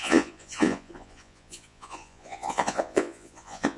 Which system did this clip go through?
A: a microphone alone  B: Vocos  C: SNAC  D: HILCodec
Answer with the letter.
B